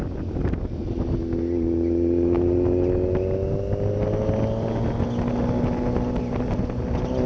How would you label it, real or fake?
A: real